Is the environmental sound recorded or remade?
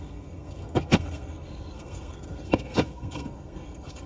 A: remade